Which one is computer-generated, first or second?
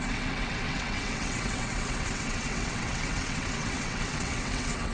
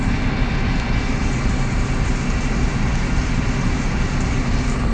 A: first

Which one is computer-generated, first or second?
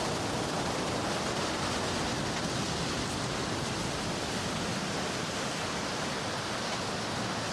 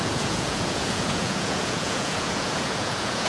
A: second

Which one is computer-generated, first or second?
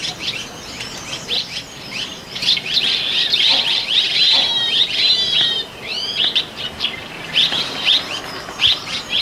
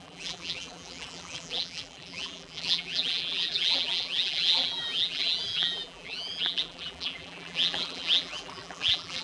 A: second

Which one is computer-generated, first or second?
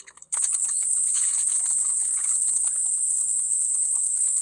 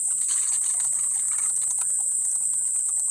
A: first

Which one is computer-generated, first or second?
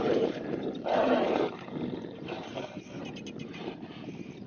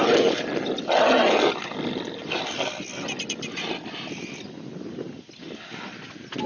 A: first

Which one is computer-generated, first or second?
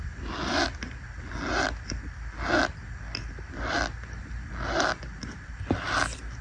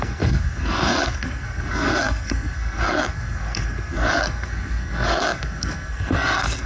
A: second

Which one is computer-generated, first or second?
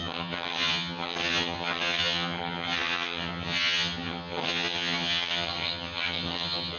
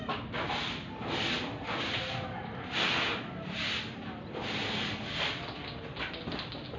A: first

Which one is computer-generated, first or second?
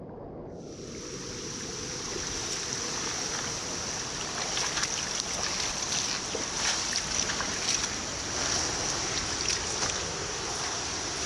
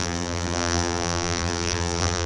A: second